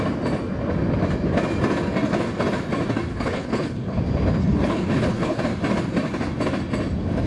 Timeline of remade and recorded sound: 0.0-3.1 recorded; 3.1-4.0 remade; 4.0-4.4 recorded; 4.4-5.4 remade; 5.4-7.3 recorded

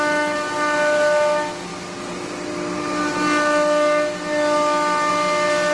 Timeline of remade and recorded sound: 0.0-5.7 recorded

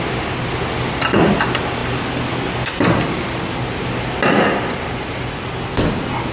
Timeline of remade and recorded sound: 0.0-6.3 recorded